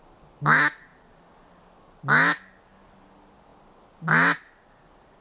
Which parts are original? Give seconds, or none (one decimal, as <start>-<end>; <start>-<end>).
0.0-5.2